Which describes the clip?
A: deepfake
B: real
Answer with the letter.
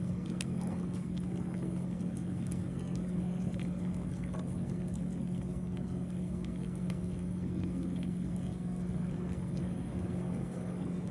A